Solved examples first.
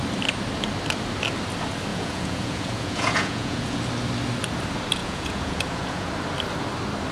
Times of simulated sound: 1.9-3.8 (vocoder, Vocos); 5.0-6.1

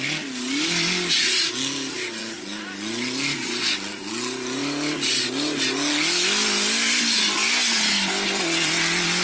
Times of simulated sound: none

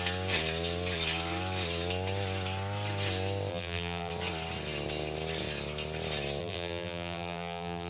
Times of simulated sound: 3.5-4.1 (vocoder, BigVGAN v2); 6.4-7.9

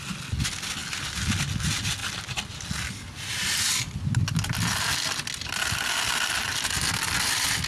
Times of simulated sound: none

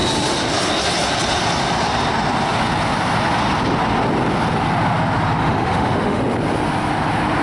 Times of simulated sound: 5.4-6.2 (autoencoder, DAC-VAE)

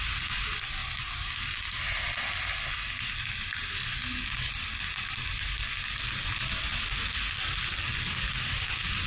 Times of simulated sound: none